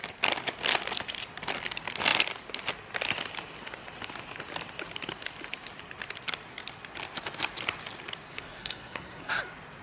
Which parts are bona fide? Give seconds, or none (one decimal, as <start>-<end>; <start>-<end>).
0.0-8.3; 9.4-9.8